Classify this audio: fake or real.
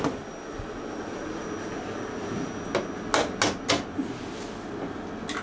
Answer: real